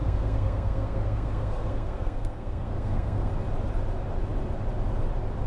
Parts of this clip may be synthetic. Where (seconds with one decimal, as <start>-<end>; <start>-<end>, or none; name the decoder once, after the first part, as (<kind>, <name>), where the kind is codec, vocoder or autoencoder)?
0.0-3.3 (codec, SNAC)